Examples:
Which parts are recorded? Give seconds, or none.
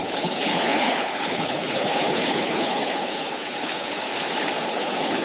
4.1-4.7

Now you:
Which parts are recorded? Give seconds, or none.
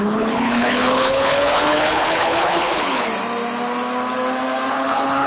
3.1-4.7